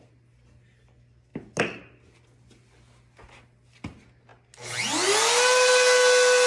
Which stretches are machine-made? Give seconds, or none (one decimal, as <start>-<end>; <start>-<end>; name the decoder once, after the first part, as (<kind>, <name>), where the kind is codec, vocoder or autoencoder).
none